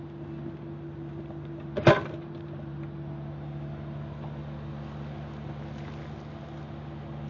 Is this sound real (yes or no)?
yes